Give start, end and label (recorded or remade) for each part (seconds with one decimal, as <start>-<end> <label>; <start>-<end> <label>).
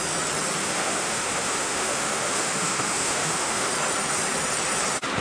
0.0-0.6 recorded; 0.6-3.7 remade; 3.7-5.2 recorded